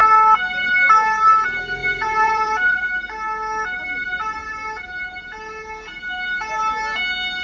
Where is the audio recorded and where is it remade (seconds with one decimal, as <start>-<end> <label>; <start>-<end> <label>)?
0.0-1.8 recorded; 1.8-2.8 remade; 2.8-7.4 recorded